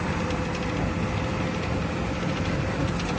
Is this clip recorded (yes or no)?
yes